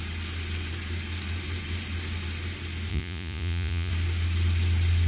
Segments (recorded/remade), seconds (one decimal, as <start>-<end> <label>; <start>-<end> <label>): 0.0-2.9 recorded; 2.9-3.9 remade; 3.9-5.1 recorded